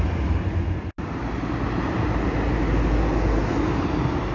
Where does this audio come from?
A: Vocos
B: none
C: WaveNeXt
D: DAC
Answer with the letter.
B